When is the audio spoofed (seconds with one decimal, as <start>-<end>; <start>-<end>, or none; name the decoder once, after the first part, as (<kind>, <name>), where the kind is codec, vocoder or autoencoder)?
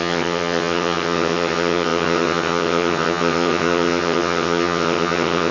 0.0-5.5 (vocoder, HiFi-GAN)